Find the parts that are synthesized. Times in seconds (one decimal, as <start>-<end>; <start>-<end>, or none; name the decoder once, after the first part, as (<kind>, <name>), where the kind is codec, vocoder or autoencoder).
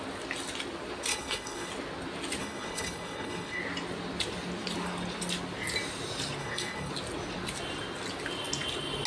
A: 1.1-1.7 (codec, HILCodec); 2.4-3.6; 6.4-6.9